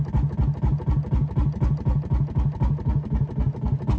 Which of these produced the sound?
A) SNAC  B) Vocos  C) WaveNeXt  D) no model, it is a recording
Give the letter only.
D